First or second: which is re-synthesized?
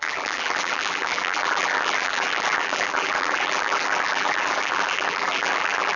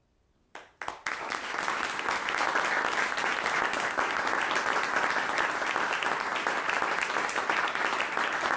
first